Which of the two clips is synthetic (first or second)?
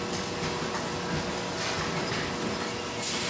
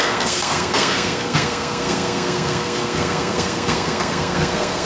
second